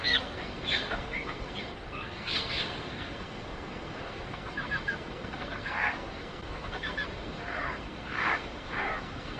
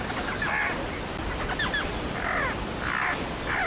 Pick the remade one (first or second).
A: first